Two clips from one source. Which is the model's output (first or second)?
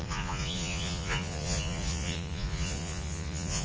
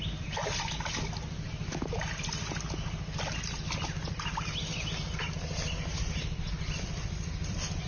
first